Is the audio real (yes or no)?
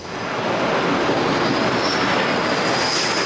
yes